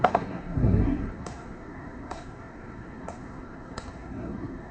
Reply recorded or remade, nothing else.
remade